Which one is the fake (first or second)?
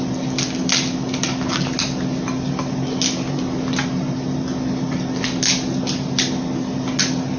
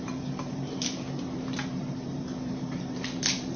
second